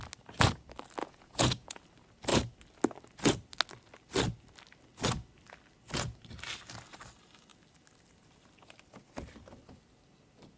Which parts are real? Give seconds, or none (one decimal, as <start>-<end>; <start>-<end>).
0.0-1.0; 1.8-10.6